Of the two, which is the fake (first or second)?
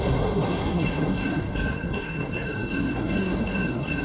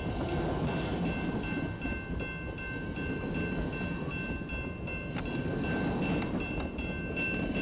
first